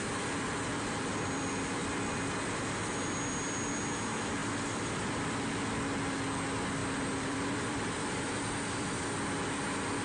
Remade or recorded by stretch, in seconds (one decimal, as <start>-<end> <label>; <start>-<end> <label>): 0.0-4.4 recorded; 4.4-5.5 remade; 5.5-6.8 recorded; 6.8-8.9 remade; 8.9-10.0 recorded